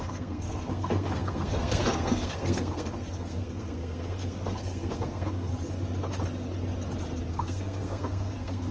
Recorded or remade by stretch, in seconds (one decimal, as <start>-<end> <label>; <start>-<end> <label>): 0.0-5.5 remade; 5.5-7.3 recorded; 7.3-8.7 remade